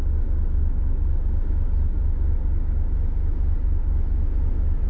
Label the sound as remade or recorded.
recorded